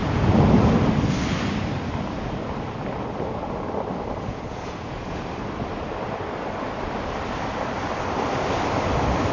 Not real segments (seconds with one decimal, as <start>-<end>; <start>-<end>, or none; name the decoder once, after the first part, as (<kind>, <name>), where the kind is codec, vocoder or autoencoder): 0.0-0.7 (vocoder, Vocos); 4.3-5.2